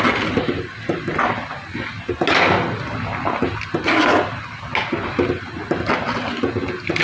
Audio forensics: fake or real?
real